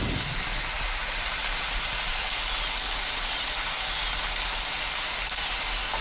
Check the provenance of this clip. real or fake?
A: real